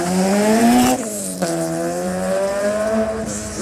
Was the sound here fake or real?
fake